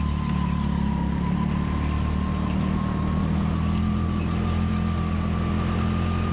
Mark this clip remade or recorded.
recorded